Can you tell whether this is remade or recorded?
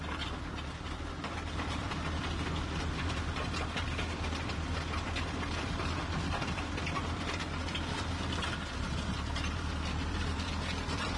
remade